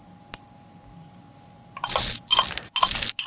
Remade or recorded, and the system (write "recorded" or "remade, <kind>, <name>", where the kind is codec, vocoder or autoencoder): recorded